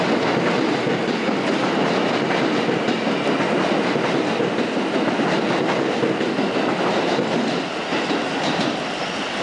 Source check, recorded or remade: recorded